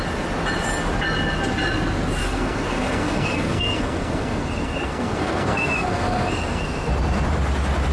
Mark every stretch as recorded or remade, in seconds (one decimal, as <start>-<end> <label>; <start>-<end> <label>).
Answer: 0.0-2.2 recorded; 2.2-6.9 remade; 6.9-7.9 recorded